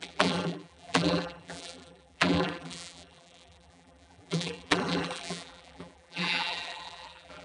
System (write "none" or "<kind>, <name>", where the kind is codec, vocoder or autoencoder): vocoder, BigVGAN v2